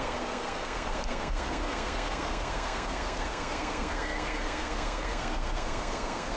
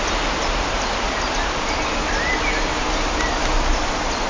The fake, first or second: first